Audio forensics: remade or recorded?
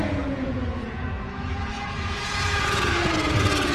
remade